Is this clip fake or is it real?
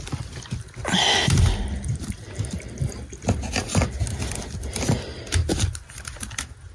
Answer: real